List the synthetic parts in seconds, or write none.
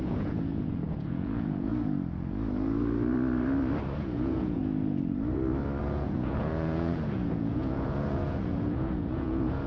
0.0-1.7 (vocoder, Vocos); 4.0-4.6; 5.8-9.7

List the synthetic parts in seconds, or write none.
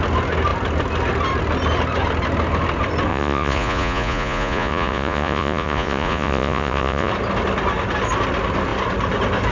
3.1-7.1 (vocoder, Vocos)